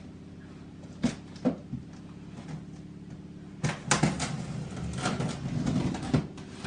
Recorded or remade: recorded